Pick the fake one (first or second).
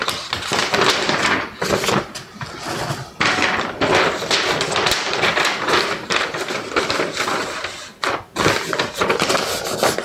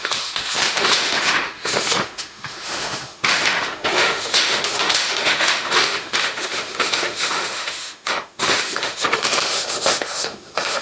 second